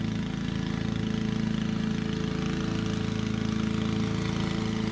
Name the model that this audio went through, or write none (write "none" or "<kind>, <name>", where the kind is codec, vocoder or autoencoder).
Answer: none